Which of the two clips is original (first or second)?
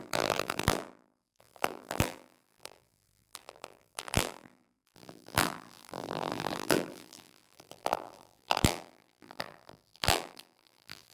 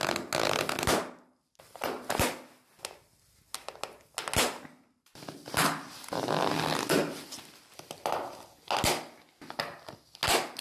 second